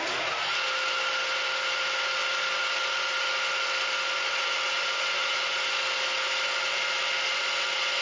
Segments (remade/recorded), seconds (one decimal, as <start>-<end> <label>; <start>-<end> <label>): 0.0-8.0 recorded

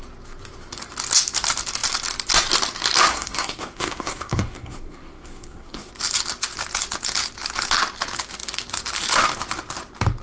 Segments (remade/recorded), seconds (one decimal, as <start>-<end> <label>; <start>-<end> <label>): 0.0-3.1 recorded; 3.1-5.9 remade; 5.9-10.2 recorded

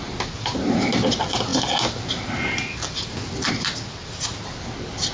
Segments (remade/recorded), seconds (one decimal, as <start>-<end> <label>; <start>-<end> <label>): 0.0-5.1 recorded

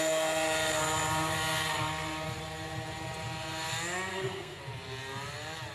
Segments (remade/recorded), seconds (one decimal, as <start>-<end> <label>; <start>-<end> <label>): 0.0-4.1 recorded; 4.1-4.6 remade; 4.6-5.7 recorded